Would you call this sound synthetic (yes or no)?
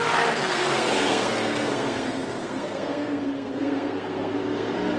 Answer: yes